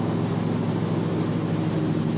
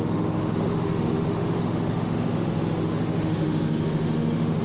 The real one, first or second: first